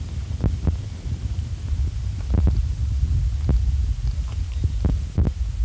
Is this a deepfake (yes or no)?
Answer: no